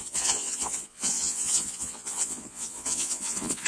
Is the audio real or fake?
fake